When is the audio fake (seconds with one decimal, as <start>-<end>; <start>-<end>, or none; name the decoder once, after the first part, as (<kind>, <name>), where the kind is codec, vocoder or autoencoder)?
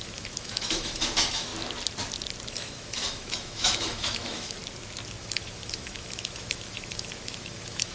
0.0-1.5 (autoencoder, DAC-VAE); 2.5-4.6; 5.2-7.9